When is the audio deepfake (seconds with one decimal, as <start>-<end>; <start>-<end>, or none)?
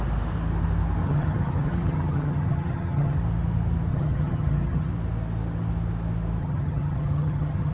1.0-3.2; 3.9-4.9; 6.4-7.7